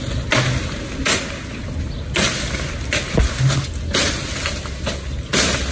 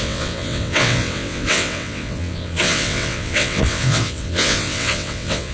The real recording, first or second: first